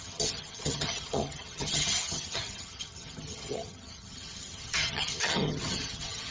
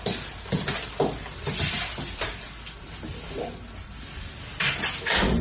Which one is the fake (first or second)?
first